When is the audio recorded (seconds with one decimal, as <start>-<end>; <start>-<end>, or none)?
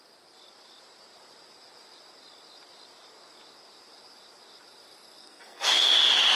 0.0-5.2; 5.9-6.4